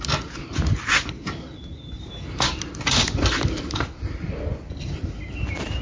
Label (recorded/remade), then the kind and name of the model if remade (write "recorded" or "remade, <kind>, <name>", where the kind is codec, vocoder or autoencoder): recorded